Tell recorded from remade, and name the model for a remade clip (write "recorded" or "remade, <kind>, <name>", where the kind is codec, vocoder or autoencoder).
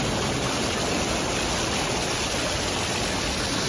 recorded